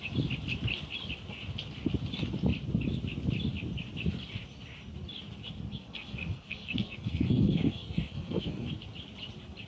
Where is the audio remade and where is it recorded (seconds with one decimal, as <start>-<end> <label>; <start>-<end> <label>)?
0.0-5.7 recorded; 5.7-8.7 remade; 8.7-9.7 recorded